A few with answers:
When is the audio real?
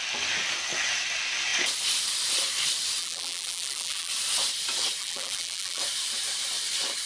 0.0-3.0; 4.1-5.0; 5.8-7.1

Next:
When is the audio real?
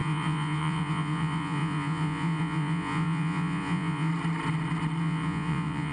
4.1-5.0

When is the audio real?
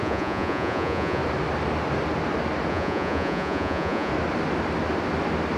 1.2-2.7; 4.1-5.6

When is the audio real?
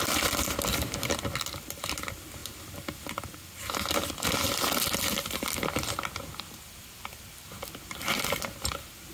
0.0-9.1